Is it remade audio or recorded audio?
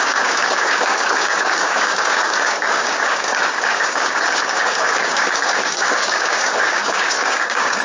remade